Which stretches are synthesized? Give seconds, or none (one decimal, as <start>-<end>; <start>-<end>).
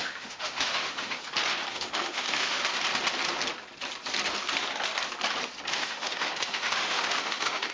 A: 0.0-1.2; 1.7-2.6; 5.7-7.7